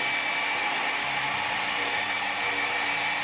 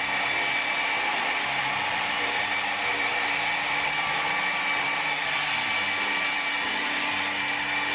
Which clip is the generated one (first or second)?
second